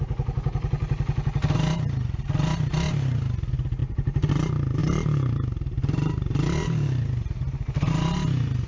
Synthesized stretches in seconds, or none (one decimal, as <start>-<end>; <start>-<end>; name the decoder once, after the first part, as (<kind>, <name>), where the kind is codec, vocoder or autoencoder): 3.8-4.3 (vocoder, BigVGAN v2); 4.8-7.9